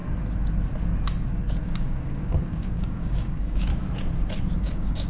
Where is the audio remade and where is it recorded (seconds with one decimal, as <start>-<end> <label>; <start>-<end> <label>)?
0.0-1.6 recorded; 1.6-3.7 remade; 3.7-4.6 recorded; 4.6-5.1 remade